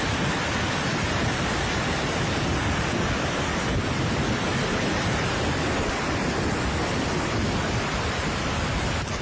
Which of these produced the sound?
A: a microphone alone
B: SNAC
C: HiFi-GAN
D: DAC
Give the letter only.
A